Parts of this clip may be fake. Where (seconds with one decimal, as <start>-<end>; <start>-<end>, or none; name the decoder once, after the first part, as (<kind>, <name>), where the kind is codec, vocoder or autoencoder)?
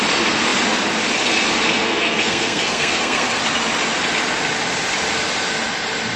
1.8-3.4 (codec, SNAC)